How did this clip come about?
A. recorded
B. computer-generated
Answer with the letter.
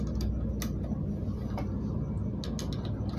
A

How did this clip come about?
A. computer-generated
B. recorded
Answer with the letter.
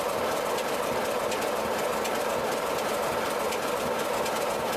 B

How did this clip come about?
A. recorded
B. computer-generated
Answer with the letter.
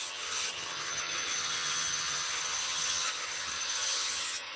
B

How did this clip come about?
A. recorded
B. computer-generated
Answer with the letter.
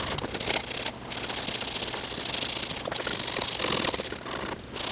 A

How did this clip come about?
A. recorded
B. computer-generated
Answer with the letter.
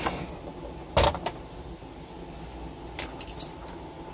A